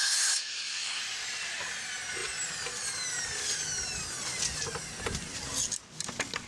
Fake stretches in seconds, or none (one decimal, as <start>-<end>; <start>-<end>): 0.0-1.0